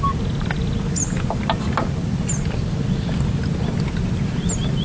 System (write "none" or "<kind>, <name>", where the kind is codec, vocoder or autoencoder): none